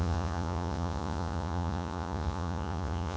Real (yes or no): no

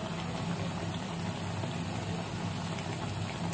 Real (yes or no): yes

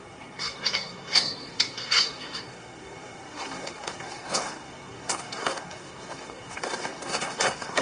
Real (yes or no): no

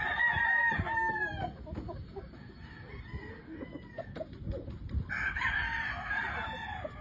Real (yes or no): yes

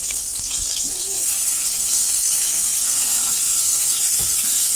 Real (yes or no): no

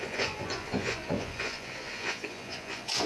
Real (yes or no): no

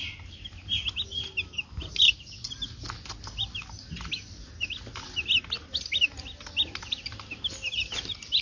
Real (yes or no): yes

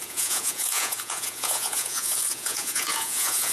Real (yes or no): no